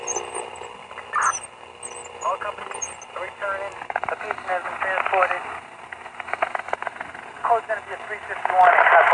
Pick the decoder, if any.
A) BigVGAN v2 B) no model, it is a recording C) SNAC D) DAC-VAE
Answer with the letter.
B